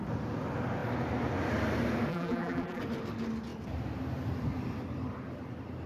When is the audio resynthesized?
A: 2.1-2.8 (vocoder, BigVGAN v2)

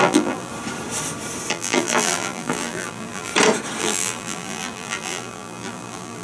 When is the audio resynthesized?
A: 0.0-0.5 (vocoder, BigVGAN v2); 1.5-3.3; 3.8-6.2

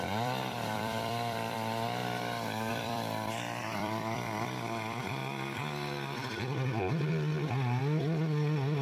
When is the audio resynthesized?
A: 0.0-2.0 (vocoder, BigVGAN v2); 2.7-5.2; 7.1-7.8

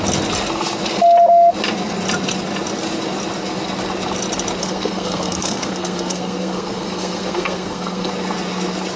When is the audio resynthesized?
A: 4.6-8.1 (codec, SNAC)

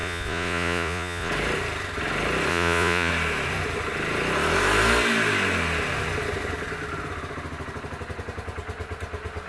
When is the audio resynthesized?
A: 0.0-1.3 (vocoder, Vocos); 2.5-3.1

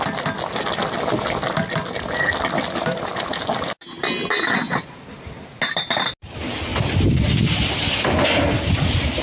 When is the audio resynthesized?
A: none